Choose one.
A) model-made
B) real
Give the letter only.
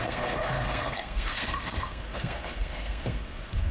A